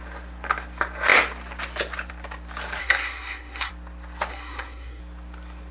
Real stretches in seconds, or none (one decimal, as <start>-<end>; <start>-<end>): 0.0-2.8; 3.7-4.3; 5.0-5.7